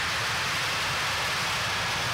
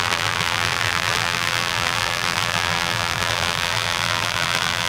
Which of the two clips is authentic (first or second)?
first